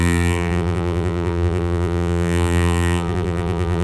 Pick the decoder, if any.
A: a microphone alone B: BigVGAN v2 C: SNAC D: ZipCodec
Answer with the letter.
B